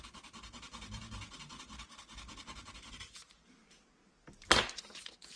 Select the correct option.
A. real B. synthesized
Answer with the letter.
A